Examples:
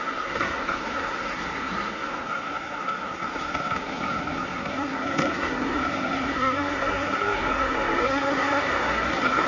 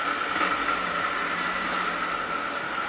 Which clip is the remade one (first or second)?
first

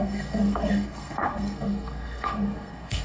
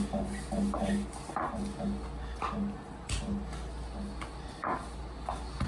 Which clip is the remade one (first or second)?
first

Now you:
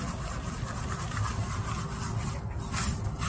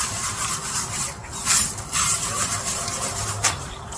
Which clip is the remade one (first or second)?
second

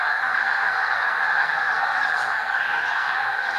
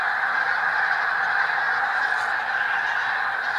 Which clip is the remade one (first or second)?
first